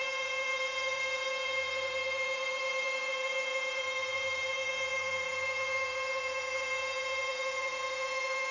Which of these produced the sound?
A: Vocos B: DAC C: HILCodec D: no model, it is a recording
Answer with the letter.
A